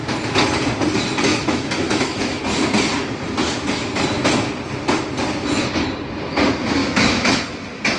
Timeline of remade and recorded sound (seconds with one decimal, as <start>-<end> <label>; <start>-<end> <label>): 0.0-1.3 recorded; 1.3-2.4 remade; 2.4-6.8 recorded; 6.8-7.4 remade; 7.4-8.0 recorded